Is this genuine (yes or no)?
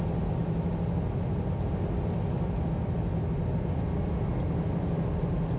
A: yes